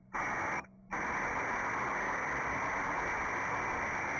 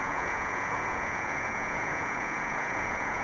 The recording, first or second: first